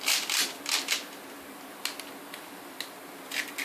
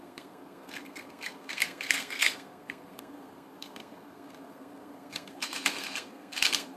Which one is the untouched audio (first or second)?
first